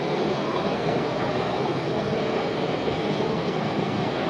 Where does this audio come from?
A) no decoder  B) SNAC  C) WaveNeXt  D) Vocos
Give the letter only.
B